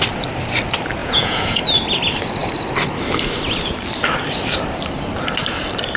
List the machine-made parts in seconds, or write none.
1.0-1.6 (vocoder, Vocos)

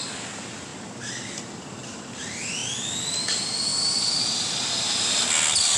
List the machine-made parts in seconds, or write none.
3.7-5.2 (vocoder, BigVGAN v2)

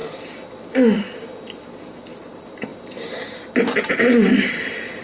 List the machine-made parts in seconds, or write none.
1.8-5.0 (vocoder, BigVGAN v2)

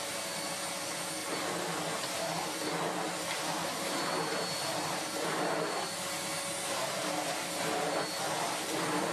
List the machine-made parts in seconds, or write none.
none

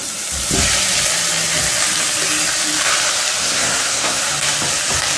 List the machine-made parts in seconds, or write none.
3.4-4.2 (codec, SNAC)

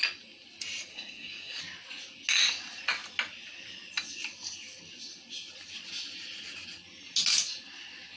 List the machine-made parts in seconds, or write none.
0.9-1.6 (codec, SNAC)